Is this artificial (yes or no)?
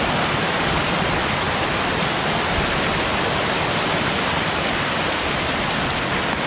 no